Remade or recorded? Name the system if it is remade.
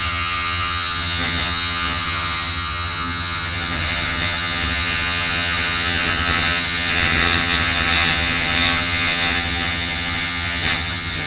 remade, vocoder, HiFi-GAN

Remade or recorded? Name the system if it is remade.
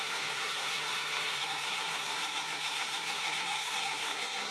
remade, codec, SNAC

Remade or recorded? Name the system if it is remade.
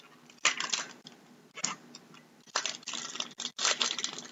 recorded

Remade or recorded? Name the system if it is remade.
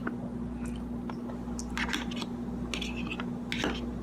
recorded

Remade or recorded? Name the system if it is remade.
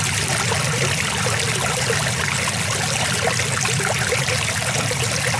recorded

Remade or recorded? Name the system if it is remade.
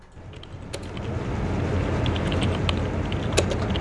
recorded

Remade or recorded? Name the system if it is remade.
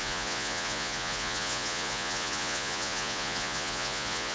remade, vocoder, Vocos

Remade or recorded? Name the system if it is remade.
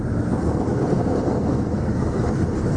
remade, codec, SNAC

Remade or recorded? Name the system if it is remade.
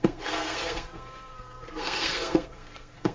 remade, codec, SNAC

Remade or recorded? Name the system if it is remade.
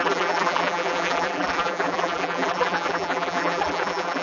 remade, vocoder, BigVGAN v2